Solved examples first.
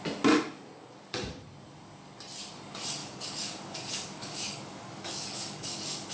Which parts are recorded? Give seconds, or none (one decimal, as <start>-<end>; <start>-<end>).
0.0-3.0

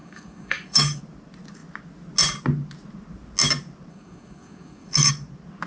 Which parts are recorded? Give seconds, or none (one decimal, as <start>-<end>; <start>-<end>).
1.0-3.9; 5.1-5.7

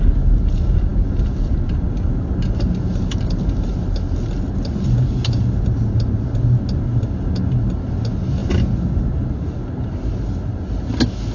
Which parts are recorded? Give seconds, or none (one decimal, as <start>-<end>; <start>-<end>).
0.0-11.3